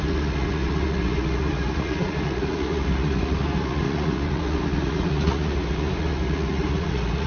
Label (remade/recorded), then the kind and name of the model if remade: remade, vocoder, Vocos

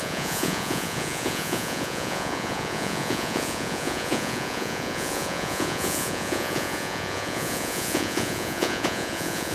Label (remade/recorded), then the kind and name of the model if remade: remade, vocoder, Vocos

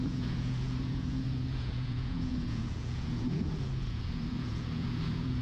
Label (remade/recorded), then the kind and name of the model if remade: remade, vocoder, Vocos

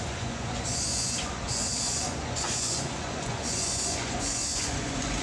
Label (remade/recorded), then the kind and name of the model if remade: remade, vocoder, Vocos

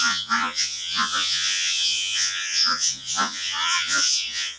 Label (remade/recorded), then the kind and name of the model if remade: remade, vocoder, Vocos